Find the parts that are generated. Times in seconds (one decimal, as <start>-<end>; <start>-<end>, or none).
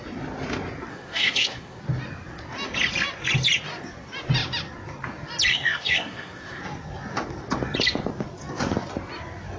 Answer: 0.9-1.8; 5.5-6.6